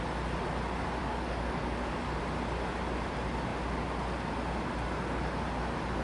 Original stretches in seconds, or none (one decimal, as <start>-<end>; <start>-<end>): 0.0-1.0; 2.2-6.0